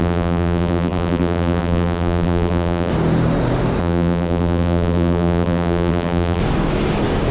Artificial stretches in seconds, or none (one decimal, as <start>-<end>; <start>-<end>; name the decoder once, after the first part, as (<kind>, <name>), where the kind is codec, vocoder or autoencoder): 0.0-2.9 (vocoder, BigVGAN v2); 3.8-6.4